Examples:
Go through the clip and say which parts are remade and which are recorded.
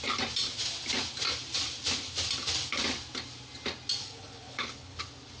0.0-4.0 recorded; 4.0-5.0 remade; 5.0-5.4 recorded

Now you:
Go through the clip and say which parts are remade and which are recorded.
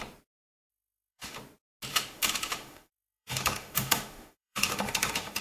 0.0-0.7 recorded; 0.7-1.4 remade; 1.4-1.9 recorded; 1.9-5.4 remade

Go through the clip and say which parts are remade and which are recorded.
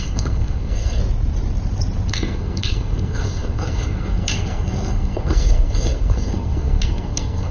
0.0-1.0 remade; 1.0-2.1 recorded; 2.1-7.5 remade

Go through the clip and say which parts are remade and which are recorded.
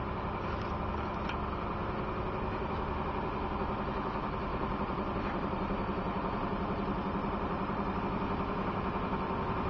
0.0-4.5 recorded; 4.5-8.0 remade; 8.0-9.7 recorded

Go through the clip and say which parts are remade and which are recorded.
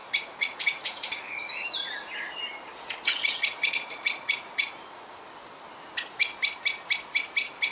0.0-1.3 remade; 1.3-2.7 recorded; 2.7-5.0 remade; 5.0-7.7 recorded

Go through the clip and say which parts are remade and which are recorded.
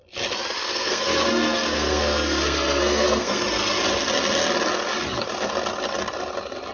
0.0-0.7 recorded; 0.7-3.4 remade; 3.4-6.7 recorded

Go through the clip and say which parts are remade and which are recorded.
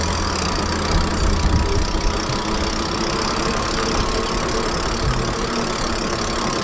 0.0-6.6 recorded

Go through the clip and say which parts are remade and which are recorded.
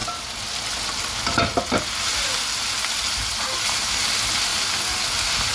0.0-5.5 recorded